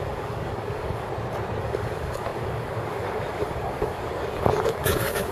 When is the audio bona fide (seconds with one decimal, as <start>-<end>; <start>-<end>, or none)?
1.1-1.6